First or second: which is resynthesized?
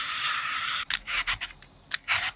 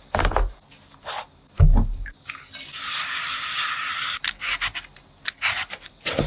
first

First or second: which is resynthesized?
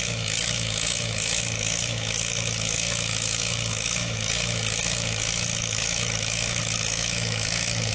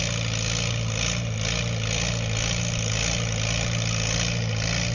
first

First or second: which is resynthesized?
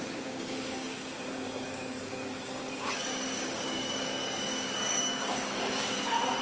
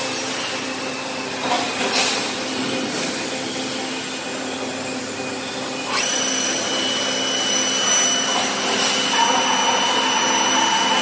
first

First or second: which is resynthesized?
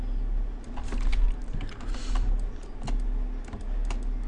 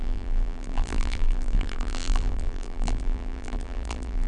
second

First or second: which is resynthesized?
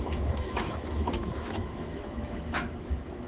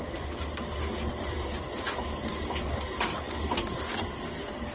first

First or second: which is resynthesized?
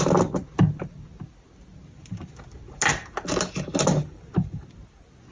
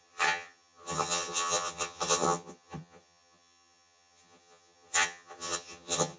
second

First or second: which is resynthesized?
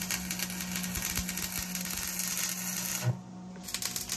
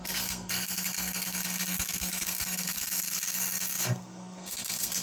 second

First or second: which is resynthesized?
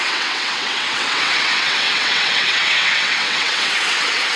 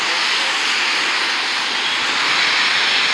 first